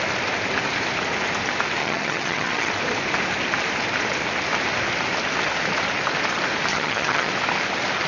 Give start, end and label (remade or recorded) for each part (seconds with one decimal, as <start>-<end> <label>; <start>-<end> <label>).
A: 0.0-1.8 recorded; 1.8-2.7 remade; 2.7-6.7 recorded; 6.7-7.3 remade; 7.3-8.1 recorded